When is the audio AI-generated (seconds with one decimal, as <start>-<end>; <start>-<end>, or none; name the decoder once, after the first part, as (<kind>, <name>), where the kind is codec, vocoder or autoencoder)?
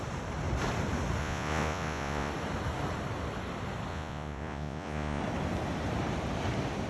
1.2-2.3 (vocoder, Vocos); 3.9-5.2